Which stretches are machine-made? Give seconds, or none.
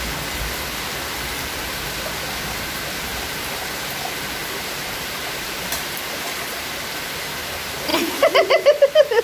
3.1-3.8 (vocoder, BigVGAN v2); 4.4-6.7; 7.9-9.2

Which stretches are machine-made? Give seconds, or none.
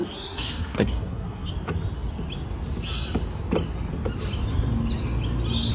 0.0-1.5 (codec, SNAC)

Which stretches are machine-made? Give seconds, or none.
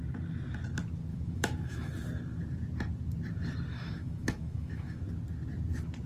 1.1-1.9 (autoencoder, DAC-VAE); 3.7-5.0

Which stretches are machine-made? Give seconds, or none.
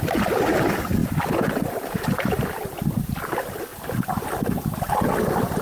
0.0-1.0 (vocoder, BigVGAN v2); 1.6-3.7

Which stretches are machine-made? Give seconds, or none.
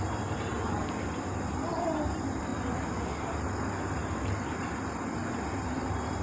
0.0-2.5 (vocoder, BigVGAN v2); 5.5-6.2